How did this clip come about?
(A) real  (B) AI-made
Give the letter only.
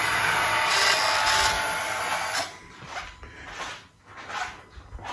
A